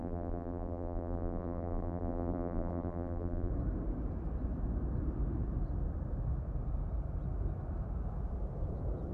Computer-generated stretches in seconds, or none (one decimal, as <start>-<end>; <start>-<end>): 0.0-3.5